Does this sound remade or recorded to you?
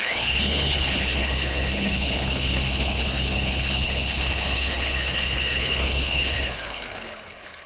remade